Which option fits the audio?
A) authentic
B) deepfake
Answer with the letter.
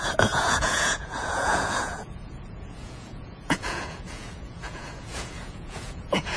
B